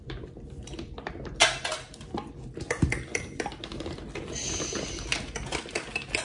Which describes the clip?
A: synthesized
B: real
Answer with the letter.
B